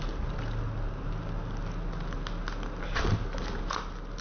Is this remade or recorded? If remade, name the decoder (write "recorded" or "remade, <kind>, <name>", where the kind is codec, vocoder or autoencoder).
recorded